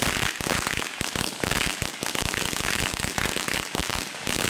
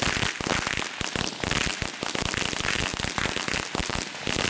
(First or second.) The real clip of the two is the second